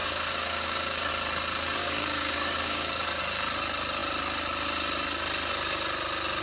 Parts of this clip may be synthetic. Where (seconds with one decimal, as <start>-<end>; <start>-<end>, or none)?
0.0-1.1; 1.8-3.2